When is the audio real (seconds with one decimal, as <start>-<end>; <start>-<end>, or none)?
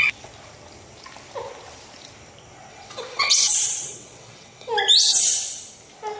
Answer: 0.0-2.7; 4.7-6.2